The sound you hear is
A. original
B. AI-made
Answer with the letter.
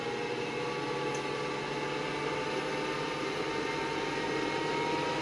A